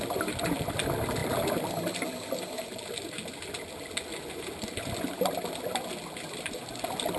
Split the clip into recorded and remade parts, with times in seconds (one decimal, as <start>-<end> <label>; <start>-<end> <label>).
0.0-7.2 recorded